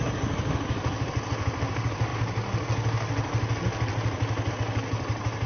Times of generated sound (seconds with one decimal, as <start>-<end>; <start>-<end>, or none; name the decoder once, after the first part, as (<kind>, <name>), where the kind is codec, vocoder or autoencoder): none

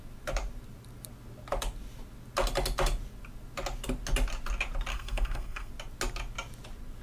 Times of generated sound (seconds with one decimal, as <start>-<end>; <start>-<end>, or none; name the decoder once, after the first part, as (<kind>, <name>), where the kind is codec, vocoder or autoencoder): 4.9-5.7 (codec, SNAC)

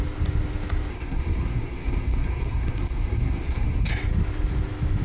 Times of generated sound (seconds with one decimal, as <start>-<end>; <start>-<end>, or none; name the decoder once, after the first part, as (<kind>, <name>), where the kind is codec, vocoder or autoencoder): 0.9-3.9 (codec, SNAC)

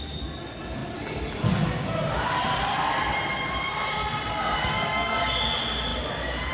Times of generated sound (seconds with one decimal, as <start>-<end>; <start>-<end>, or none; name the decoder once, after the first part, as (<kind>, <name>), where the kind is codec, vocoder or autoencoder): 4.3-5.2 (codec, SNAC)

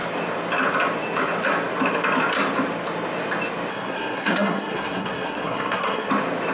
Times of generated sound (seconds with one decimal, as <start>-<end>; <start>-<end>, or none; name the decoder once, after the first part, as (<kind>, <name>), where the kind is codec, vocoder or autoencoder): 3.7-6.1 (codec, SNAC)

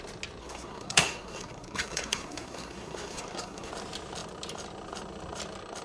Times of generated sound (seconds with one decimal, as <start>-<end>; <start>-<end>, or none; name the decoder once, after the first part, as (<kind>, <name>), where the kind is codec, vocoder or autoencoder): 0.4-3.7 (codec, SNAC)

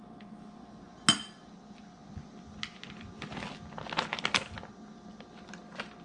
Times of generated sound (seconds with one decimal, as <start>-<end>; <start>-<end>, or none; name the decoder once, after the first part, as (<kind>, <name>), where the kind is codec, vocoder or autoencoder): none

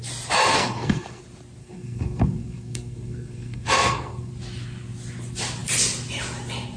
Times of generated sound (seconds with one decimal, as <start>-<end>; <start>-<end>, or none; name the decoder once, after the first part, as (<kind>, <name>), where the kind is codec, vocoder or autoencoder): 0.5-1.2 (codec, SNAC); 1.6-4.3